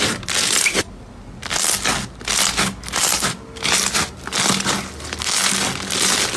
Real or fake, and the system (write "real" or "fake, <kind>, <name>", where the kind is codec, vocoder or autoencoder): real